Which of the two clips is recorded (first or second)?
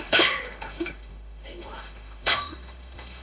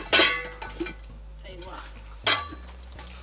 second